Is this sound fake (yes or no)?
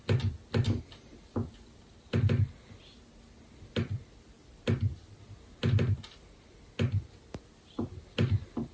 no